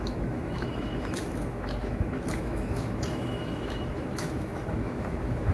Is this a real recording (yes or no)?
no